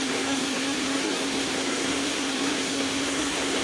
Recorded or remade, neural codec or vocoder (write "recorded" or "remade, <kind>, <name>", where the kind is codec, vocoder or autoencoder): remade, codec, SNAC